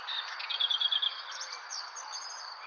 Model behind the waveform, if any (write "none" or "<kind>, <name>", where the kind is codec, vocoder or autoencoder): none